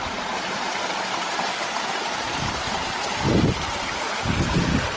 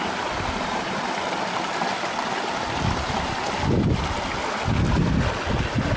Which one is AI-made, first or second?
first